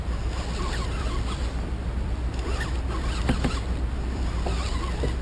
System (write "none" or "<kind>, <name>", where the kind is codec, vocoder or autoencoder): none